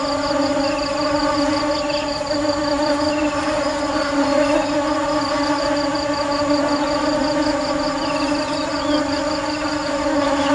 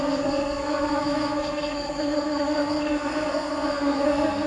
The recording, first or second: first